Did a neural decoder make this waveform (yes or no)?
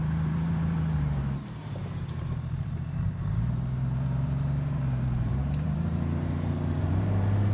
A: yes